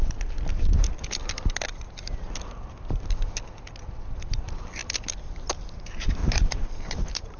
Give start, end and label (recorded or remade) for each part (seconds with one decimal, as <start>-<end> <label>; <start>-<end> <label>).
0.0-6.2 recorded; 6.2-7.4 remade